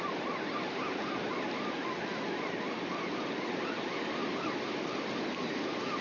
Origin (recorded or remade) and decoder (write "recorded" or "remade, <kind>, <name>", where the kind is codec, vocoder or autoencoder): recorded